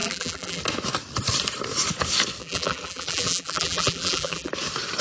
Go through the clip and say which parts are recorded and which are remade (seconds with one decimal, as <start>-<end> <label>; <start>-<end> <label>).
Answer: 0.0-0.6 remade; 0.6-2.4 recorded; 2.4-4.5 remade; 4.5-5.0 recorded